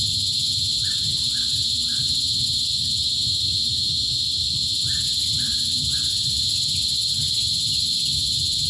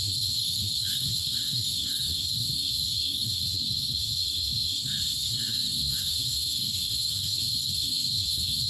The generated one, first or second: second